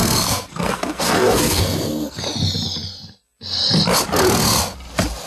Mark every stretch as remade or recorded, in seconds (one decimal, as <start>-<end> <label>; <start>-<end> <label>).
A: 0.0-2.2 remade; 2.2-5.3 recorded